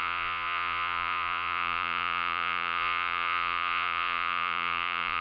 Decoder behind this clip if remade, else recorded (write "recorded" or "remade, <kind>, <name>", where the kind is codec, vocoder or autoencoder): remade, vocoder, Vocos